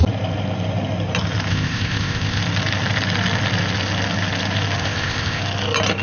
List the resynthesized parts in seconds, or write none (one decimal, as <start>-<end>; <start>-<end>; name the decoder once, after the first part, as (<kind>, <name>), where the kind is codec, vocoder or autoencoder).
1.5-2.4 (codec, ZipCodec); 4.8-5.4